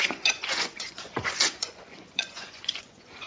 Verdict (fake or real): fake